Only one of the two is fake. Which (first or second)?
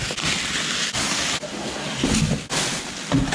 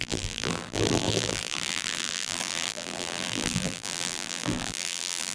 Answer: second